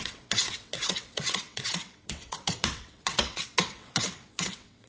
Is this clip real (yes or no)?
no